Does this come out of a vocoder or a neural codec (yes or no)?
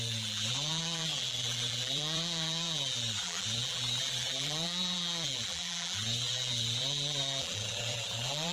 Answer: yes